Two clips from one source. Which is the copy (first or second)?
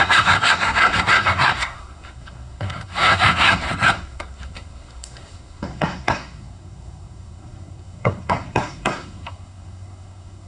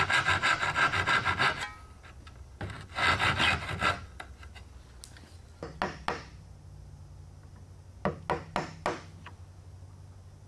first